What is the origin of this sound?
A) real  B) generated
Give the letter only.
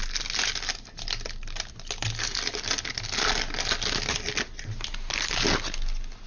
A